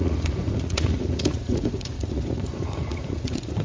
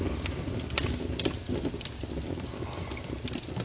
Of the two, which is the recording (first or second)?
second